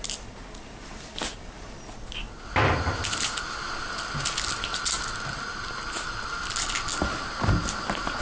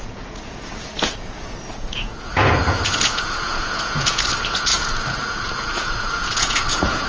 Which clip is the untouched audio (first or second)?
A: first